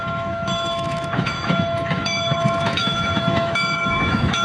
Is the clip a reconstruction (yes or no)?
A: yes